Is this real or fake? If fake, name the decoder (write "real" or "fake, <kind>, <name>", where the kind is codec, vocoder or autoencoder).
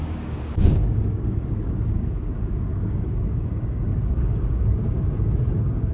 fake, codec, DAC